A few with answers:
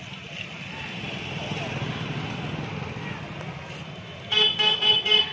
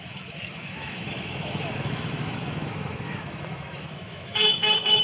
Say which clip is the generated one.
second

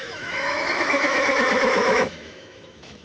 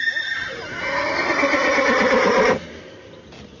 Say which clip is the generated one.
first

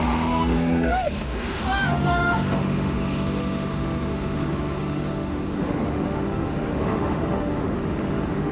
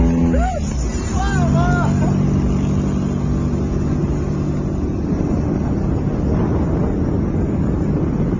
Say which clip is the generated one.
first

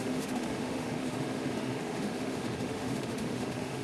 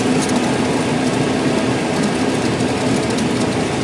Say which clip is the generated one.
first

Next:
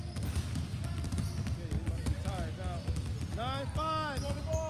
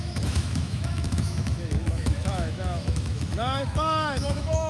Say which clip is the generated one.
second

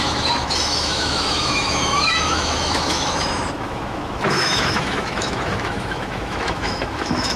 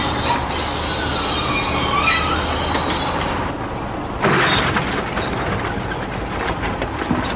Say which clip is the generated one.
first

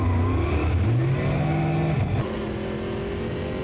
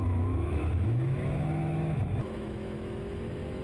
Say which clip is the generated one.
second